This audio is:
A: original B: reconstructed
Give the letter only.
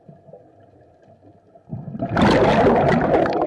A